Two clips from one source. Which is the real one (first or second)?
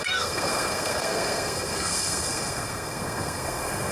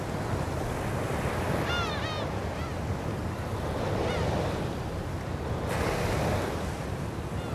second